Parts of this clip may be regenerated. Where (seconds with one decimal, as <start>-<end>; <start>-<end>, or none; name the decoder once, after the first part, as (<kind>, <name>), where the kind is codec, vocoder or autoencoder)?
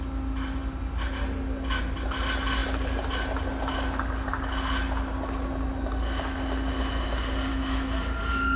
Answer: 7.5-8.0 (autoencoder, DAC-VAE)